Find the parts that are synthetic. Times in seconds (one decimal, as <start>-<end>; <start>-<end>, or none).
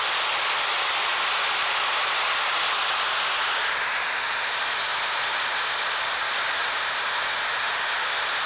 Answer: none